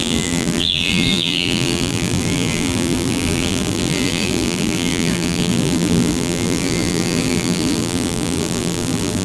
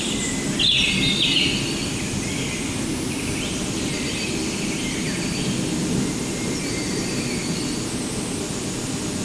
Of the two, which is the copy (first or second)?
first